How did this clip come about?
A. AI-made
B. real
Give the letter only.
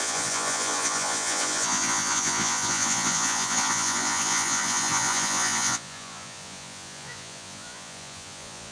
A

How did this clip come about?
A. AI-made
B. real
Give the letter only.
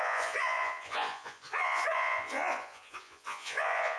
A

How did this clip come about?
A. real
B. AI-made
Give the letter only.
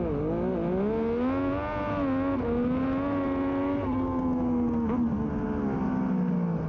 A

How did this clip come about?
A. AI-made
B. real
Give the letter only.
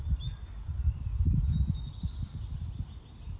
B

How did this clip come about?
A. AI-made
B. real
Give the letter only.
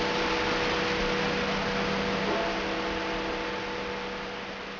B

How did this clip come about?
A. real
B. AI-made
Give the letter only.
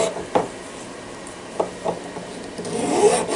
A